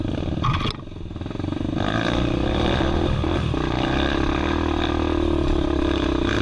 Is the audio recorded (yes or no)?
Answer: yes